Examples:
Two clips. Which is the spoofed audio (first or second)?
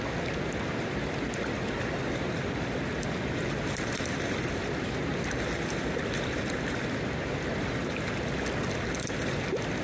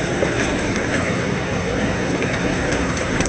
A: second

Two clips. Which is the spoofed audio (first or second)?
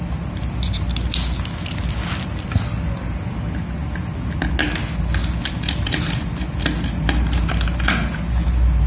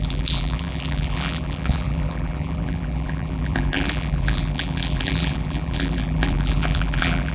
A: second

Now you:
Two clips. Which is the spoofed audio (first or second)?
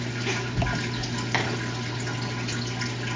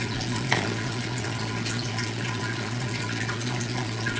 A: second